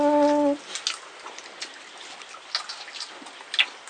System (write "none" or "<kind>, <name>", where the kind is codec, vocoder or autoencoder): none